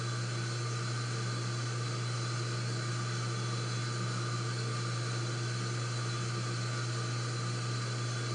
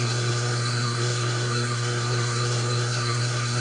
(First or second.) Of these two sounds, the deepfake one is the second